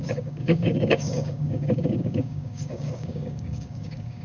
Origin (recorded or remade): remade